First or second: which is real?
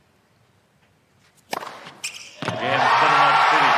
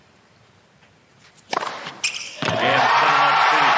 first